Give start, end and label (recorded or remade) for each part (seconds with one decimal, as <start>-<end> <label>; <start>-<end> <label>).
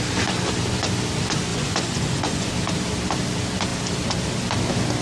0.0-1.5 recorded; 1.5-2.5 remade; 2.5-5.0 recorded